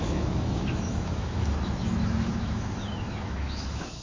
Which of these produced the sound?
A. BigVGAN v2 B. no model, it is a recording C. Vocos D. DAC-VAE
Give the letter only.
D